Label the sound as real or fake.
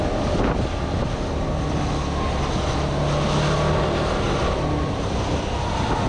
real